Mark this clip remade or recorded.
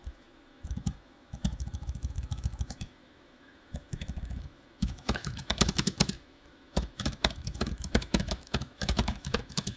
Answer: remade